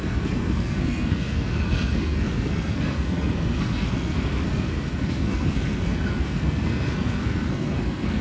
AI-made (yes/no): yes